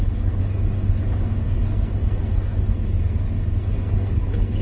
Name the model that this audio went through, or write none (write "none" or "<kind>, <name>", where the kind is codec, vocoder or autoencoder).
codec, SNAC